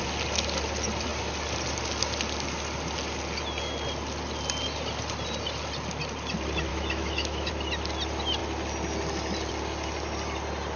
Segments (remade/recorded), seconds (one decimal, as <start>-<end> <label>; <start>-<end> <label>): 0.0-6.7 recorded; 6.7-7.5 remade; 7.5-10.8 recorded